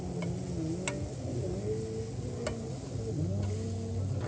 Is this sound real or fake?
real